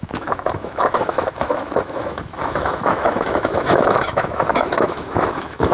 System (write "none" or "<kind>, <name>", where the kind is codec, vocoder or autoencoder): autoencoder, DAC-VAE